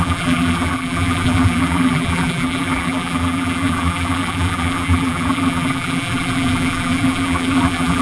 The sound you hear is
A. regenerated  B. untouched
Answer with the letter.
A